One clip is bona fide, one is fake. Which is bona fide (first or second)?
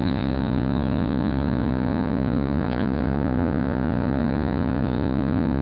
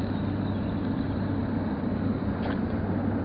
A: second